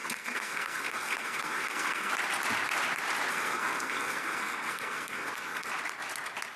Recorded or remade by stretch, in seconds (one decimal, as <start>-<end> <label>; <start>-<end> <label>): 0.0-2.1 remade; 2.1-3.3 recorded; 3.3-5.7 remade; 5.7-6.6 recorded